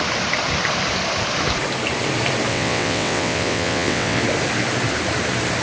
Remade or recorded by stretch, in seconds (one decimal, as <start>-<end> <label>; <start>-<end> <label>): 0.0-2.5 recorded; 2.5-4.2 remade; 4.2-5.6 recorded